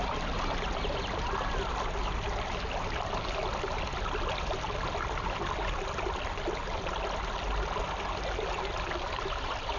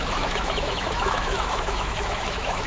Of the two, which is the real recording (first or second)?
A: first